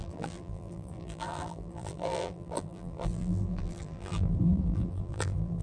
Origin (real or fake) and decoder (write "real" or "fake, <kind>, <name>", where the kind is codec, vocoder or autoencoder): fake, vocoder, BigVGAN v2